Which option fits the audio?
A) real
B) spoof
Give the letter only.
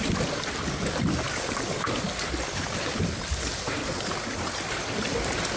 A